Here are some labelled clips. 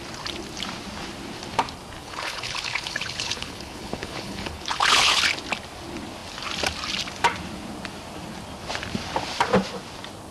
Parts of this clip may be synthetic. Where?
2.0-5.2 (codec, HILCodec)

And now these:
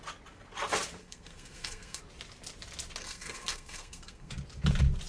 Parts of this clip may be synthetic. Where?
1.0-2.0 (codec, SNAC); 3.0-4.3

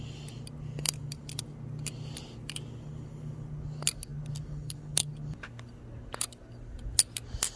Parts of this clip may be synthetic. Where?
none

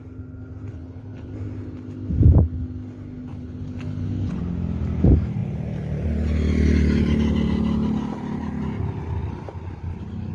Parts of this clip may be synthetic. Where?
0.7-1.3 (codec, HILCodec); 3.3-4.4

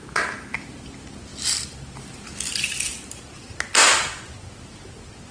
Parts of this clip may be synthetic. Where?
none

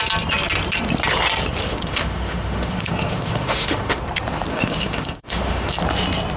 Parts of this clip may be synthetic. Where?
1.7-4.0 (autoencoder, DAC-VAE); 4.5-5.8

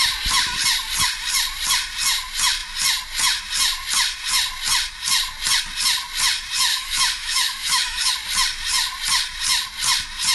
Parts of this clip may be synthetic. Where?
6.7-8.1 (autoencoder, DAC-VAE)

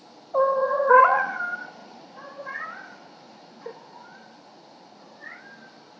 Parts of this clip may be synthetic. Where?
0.6-1.4 (vocoder, Vocos); 1.8-5.4